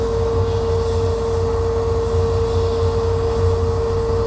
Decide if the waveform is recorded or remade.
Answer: recorded